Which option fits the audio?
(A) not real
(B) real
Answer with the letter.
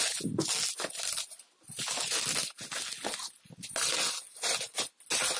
B